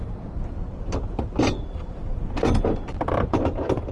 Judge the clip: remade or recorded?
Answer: recorded